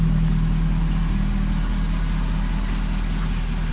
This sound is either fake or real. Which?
real